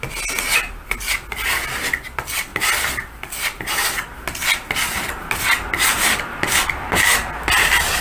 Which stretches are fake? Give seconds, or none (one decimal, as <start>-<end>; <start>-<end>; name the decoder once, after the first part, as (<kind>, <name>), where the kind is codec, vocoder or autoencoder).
none